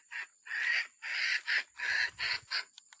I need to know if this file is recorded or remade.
recorded